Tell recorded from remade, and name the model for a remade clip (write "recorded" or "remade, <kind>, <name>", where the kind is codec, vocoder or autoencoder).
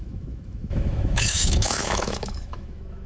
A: remade, autoencoder, DAC-VAE